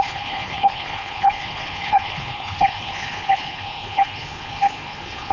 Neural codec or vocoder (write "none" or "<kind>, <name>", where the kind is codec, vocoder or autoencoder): codec, HILCodec